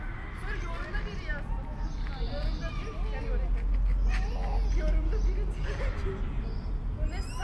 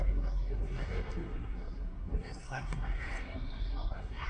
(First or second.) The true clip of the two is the first